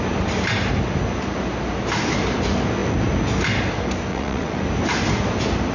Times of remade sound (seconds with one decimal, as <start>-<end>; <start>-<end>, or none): 4.1-4.6